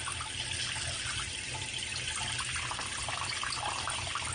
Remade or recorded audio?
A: recorded